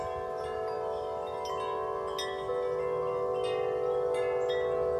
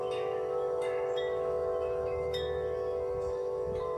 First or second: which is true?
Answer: first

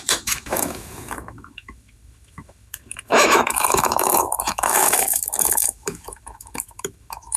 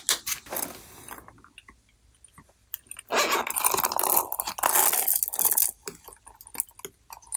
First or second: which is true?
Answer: second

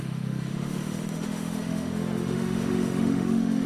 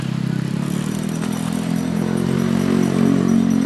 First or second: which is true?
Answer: second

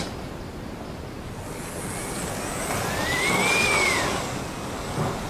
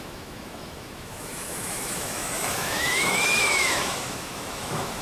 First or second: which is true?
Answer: first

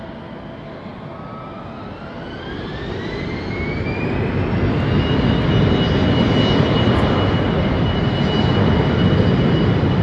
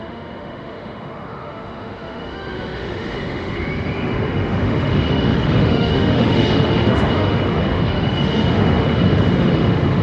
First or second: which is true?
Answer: first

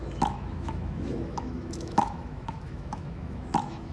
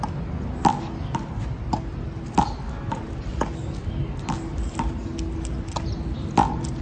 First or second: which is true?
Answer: second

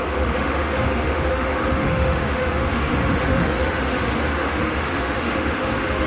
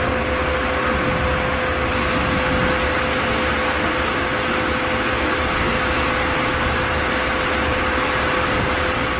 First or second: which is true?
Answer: second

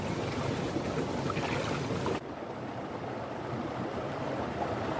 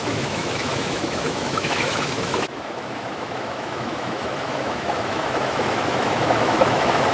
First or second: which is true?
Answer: first